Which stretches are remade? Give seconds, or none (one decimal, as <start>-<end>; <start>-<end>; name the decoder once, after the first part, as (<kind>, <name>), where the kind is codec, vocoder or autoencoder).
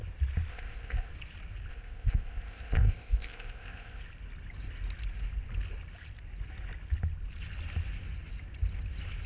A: 0.5-1.1 (codec, ZipCodec); 1.7-4.0